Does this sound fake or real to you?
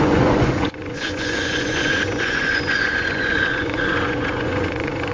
fake